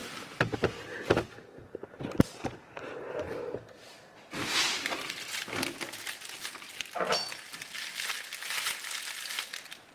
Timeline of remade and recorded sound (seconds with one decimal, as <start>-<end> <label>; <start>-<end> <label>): 0.0-9.9 recorded